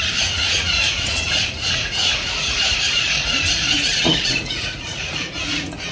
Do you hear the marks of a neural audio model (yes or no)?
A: yes